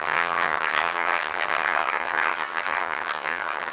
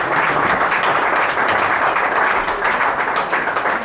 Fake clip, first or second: first